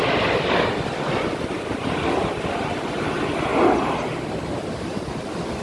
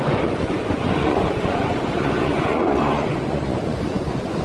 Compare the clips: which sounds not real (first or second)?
second